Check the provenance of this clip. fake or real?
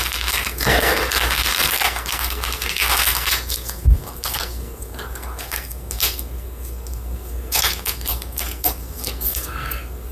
fake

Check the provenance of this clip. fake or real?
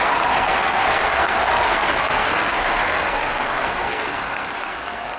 fake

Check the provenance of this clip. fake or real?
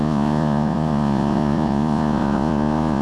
fake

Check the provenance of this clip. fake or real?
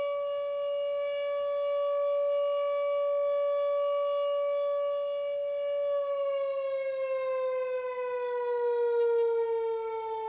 real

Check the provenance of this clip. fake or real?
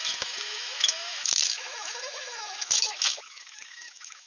fake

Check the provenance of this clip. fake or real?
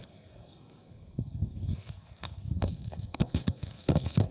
fake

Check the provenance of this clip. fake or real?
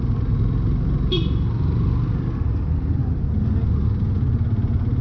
real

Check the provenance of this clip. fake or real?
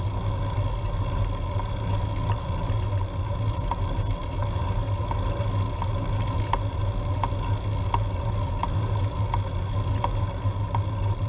real